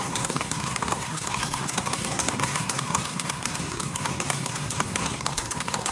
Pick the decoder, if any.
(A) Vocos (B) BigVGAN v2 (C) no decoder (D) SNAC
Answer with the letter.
D